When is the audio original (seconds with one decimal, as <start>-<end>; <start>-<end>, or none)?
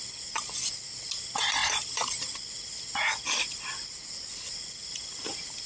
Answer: 0.0-1.6; 2.3-5.7